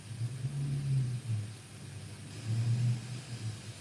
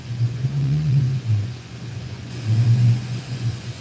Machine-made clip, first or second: second